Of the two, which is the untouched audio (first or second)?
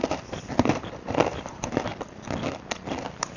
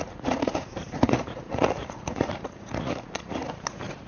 first